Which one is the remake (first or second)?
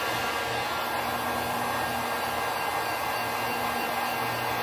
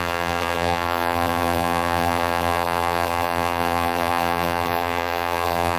second